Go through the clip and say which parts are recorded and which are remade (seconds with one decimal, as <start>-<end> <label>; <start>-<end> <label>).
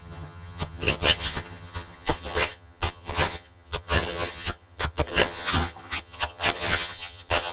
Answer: 0.0-7.5 remade